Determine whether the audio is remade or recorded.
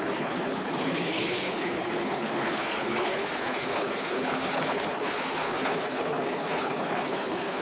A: remade